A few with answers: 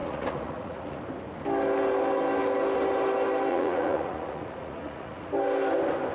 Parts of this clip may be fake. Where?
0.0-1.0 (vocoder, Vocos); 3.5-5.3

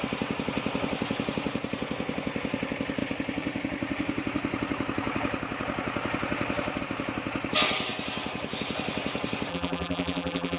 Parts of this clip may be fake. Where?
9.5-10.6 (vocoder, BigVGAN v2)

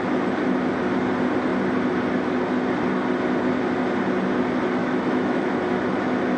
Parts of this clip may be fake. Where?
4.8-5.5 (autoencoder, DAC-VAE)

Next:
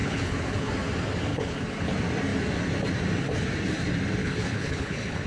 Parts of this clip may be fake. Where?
0.0-0.7 (codec, HILCodec); 1.3-1.9; 4.2-5.3

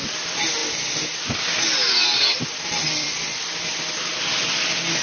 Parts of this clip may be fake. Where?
0.6-3.6 (vocoder, BigVGAN v2)

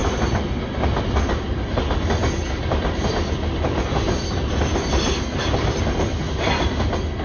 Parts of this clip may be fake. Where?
none

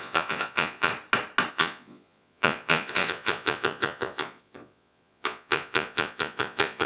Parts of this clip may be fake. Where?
0.0-0.9 (vocoder, Vocos); 1.5-6.9

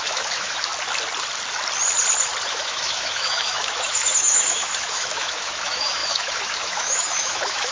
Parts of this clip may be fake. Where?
0.0-0.7 (autoencoder, DAC-VAE); 2.5-7.7